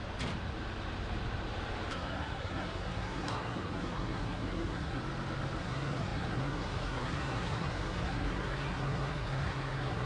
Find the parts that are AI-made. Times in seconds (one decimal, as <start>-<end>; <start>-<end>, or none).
1.9-5.0; 5.6-10.1